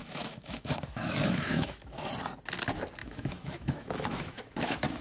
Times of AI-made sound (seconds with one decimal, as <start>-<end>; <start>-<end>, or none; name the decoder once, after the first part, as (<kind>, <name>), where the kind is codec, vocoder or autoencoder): 0.0-2.1 (autoencoder, DAC-VAE); 3.0-5.0